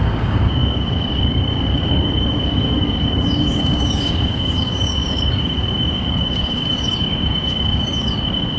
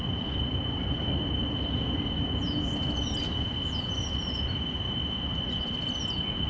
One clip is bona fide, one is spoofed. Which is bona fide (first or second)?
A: second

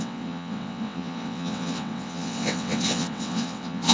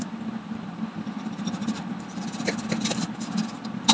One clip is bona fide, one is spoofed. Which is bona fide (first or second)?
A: second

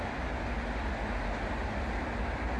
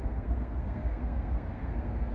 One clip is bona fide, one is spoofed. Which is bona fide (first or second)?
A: first